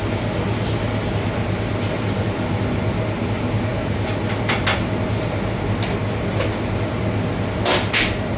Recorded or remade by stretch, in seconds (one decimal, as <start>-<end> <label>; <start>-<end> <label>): 0.0-8.4 recorded